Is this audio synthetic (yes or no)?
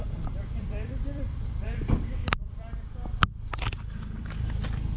yes